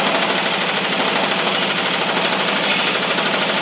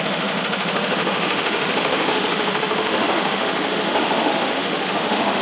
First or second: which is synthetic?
second